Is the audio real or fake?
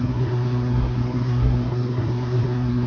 fake